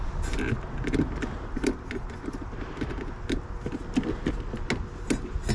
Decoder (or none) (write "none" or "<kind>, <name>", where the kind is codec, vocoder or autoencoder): none